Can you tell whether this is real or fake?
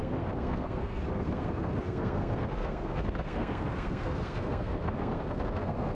fake